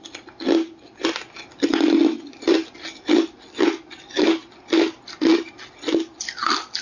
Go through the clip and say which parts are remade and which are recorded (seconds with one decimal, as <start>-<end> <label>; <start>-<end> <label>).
0.0-6.8 recorded

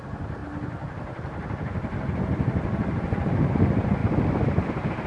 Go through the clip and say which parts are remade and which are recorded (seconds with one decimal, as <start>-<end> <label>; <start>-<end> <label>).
0.0-5.1 recorded